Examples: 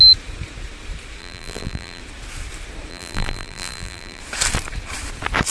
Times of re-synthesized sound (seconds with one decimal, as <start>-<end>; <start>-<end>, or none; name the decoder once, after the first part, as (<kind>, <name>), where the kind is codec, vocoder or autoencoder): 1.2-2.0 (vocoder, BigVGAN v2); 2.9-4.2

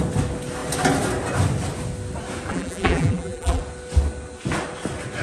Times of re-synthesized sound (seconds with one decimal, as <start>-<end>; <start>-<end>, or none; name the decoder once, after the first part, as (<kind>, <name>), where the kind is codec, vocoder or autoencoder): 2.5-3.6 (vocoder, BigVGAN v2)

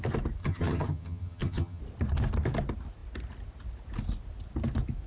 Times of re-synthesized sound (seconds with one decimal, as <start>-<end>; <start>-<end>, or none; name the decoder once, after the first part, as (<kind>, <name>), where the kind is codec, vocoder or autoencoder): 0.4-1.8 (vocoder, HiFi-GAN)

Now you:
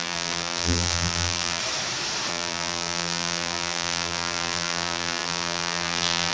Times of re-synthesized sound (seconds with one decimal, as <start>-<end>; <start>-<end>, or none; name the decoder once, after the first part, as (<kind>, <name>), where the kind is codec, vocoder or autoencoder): 0.0-1.6 (vocoder, BigVGAN v2); 2.3-6.3